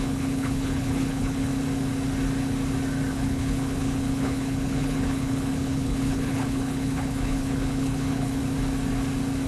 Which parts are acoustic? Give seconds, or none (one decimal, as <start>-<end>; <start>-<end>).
1.5-3.1; 8.4-9.5